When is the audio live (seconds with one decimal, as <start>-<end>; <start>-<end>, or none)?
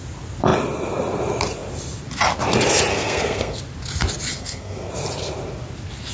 0.0-2.9; 3.6-4.3; 4.9-6.1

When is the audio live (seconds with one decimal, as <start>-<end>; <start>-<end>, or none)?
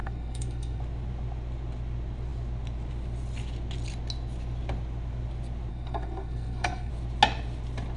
0.8-5.7; 6.9-8.0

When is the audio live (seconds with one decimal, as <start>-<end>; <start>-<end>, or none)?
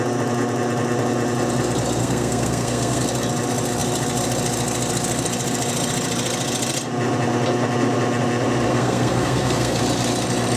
0.0-2.0; 3.0-8.7; 9.8-10.6